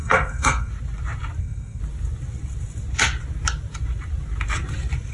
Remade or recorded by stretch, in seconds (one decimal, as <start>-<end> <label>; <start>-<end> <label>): 0.0-0.7 remade; 0.7-1.4 recorded; 1.4-1.8 remade; 1.8-5.1 recorded